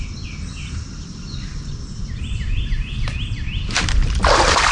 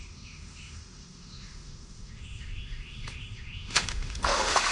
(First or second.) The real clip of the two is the first